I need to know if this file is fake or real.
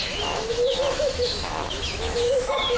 fake